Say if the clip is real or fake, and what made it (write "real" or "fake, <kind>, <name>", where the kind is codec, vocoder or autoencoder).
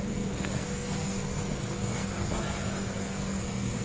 fake, codec, SNAC